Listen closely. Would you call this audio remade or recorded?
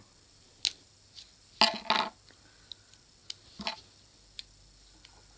recorded